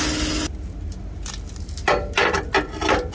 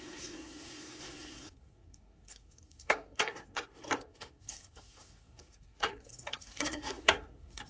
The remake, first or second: second